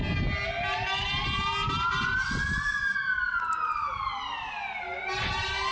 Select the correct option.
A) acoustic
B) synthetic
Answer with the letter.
A